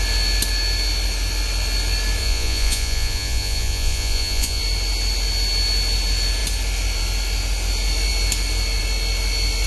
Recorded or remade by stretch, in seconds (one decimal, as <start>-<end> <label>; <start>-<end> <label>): 0.0-2.2 recorded; 2.2-4.6 remade; 4.6-9.7 recorded